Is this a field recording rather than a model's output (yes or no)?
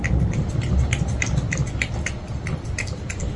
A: yes